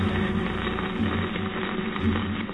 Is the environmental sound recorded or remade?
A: recorded